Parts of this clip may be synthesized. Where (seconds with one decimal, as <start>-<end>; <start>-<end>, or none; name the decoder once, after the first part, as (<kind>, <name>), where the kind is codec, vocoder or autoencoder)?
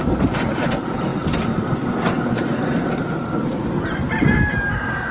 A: none